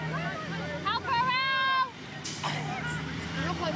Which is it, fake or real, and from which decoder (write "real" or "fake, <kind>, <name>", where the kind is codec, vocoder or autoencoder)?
real